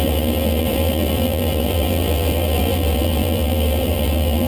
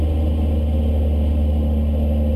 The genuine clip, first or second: second